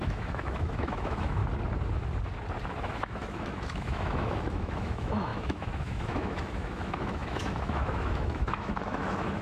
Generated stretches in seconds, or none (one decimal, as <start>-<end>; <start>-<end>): 0.0-1.4; 2.8-9.4